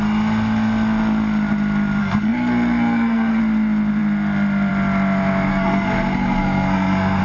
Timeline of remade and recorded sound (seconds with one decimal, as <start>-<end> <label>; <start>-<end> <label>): 0.0-2.0 recorded; 2.0-3.4 remade; 3.4-5.5 recorded; 5.5-7.2 remade